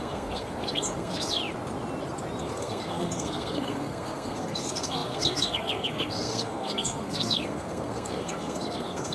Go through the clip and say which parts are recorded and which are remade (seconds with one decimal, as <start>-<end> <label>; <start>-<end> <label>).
0.0-1.4 remade; 1.4-2.4 recorded; 2.4-9.1 remade